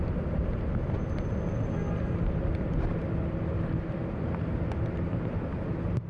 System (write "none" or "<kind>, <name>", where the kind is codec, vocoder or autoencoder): none